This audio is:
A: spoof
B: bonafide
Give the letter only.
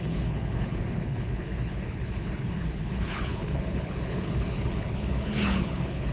A